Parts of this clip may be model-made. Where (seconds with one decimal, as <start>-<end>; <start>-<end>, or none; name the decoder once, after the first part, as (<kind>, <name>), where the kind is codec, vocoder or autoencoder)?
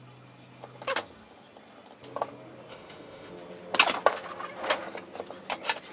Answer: 2.7-3.3 (autoencoder, DAC-VAE)